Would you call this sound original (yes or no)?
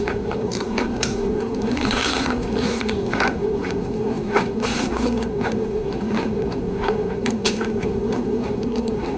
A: no